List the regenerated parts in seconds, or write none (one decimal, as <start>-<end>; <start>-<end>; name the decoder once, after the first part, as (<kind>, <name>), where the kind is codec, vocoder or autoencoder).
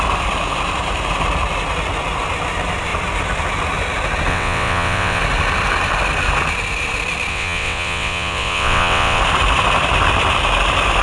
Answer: 4.3-5.2 (vocoder, WaveNeXt); 7.3-9.2